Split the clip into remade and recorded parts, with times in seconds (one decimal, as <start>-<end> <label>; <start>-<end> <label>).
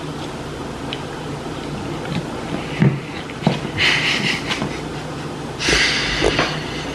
0.0-6.9 recorded